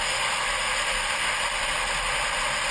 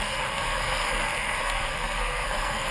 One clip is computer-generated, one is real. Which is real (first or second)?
first